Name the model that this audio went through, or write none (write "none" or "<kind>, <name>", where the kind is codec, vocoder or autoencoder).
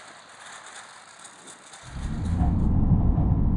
none